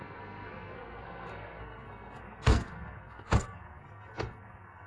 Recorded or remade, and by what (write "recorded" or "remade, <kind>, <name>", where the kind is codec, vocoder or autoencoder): remade, codec, SNAC